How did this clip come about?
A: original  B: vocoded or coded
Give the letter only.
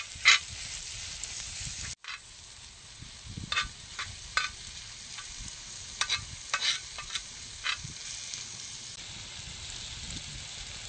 A